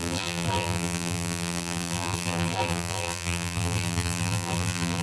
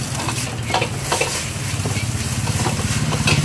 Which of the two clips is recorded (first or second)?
second